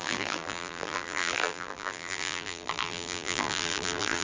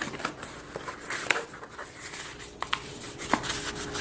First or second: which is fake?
first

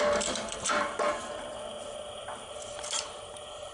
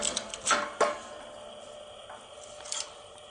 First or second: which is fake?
first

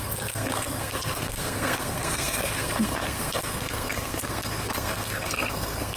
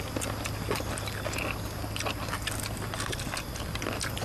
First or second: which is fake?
first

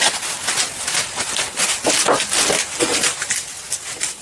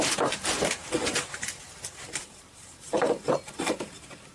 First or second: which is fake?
second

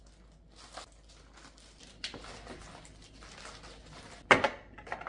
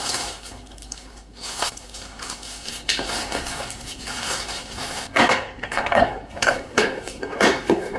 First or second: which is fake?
second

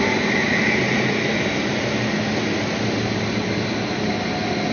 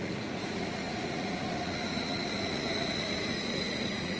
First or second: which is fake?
second